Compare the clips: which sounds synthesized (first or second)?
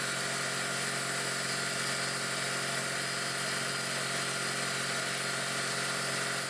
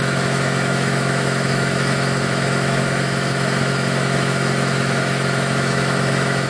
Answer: second